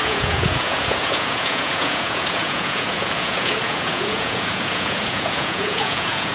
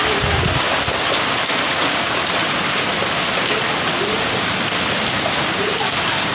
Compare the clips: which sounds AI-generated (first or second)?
first